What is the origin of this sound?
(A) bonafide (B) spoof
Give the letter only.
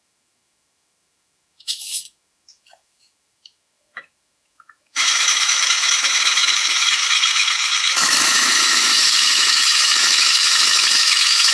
B